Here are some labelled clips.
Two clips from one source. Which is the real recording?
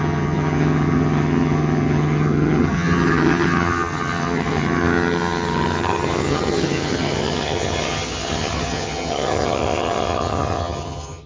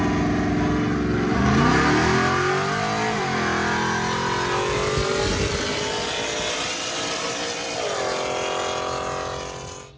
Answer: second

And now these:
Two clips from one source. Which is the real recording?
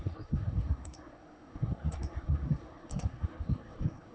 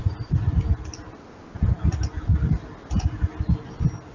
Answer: second